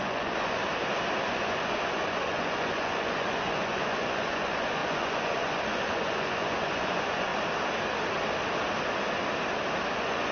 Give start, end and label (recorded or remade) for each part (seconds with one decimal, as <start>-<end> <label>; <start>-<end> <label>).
0.0-0.6 remade; 0.6-1.3 recorded; 1.3-7.3 remade; 7.3-9.9 recorded; 9.9-10.3 remade